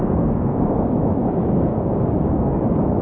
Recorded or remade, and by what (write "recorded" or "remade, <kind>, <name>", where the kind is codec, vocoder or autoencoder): remade, codec, DAC